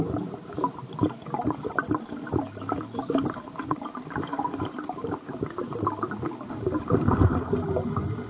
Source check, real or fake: real